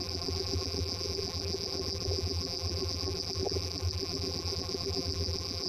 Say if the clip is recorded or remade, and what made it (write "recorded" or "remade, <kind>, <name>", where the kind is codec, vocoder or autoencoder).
remade, vocoder, BigVGAN v2